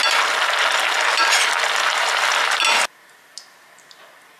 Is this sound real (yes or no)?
yes